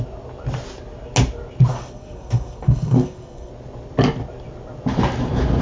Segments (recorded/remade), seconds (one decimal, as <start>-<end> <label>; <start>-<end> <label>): 0.0-1.7 recorded; 1.7-3.5 remade; 3.5-5.6 recorded